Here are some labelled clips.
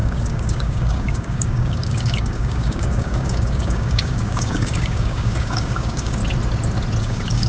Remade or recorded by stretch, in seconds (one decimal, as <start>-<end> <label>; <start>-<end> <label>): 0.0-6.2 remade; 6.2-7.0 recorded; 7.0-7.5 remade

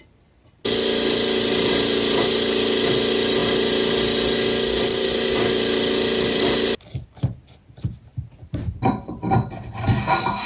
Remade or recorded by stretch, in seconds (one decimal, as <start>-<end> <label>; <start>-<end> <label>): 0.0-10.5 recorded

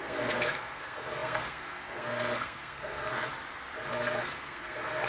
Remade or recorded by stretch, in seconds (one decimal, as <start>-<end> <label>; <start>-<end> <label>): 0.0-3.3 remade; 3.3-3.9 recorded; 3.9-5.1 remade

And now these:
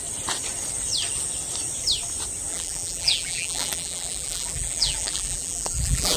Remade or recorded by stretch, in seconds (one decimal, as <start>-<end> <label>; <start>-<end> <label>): 0.0-2.5 recorded; 2.5-6.2 remade